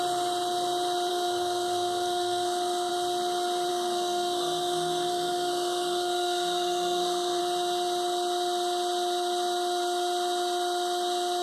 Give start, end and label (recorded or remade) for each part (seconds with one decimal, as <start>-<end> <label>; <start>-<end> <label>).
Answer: 0.0-1.1 recorded; 1.1-2.9 remade; 2.9-3.7 recorded; 3.7-7.4 remade; 7.4-11.4 recorded